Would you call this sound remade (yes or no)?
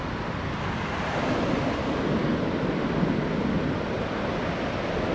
no